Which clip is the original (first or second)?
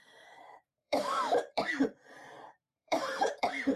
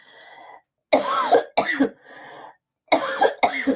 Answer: second